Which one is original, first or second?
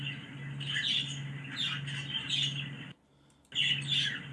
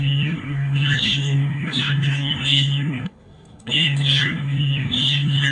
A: first